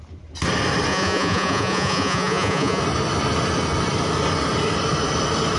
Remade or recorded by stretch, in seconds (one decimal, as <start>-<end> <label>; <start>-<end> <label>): 0.0-0.9 recorded; 0.9-2.8 remade; 2.8-5.6 recorded